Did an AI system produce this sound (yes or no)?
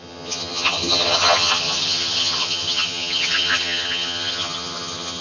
yes